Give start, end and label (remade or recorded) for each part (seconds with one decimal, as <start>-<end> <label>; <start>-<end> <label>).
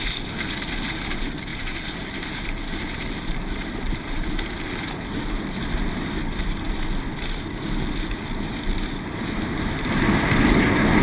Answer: 0.0-1.5 recorded; 1.5-4.3 remade; 4.3-11.0 recorded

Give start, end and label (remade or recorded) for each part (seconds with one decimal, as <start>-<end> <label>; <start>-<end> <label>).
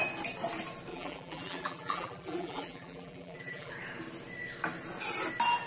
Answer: 0.0-0.9 recorded; 0.9-3.7 remade; 3.7-5.7 recorded